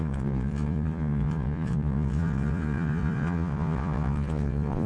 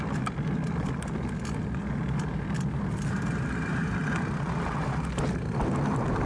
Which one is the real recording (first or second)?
second